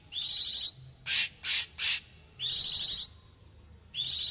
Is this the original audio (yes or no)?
yes